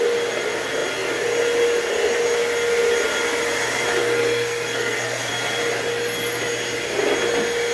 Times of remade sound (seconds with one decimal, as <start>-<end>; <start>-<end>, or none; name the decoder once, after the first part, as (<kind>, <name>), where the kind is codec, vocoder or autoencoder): 4.0-5.3 (codec, SNAC)